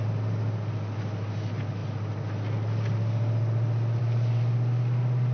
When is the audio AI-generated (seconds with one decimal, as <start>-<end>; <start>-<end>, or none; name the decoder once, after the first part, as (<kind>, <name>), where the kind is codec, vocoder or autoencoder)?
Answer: none

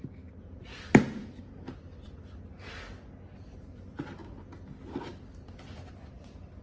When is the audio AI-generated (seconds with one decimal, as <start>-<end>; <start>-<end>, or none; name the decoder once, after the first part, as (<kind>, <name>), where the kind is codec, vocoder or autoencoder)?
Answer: none